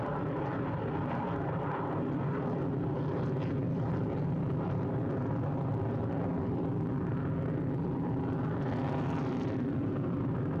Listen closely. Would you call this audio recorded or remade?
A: recorded